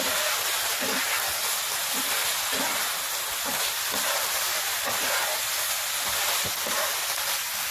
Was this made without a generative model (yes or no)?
yes